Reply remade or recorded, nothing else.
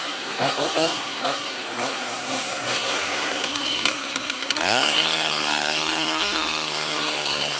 remade